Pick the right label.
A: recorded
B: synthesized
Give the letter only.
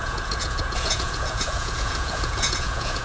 B